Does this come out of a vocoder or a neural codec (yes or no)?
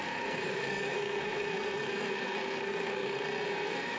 yes